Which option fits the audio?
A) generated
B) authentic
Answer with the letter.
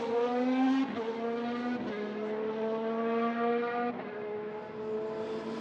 B